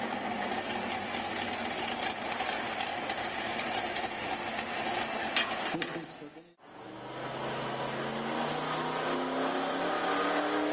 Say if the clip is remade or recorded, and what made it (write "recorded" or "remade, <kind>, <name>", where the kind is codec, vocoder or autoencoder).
recorded